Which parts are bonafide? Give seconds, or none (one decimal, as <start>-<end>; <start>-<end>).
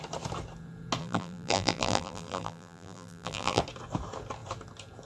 0.0-1.0; 3.6-5.1